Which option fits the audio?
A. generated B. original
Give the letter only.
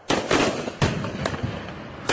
B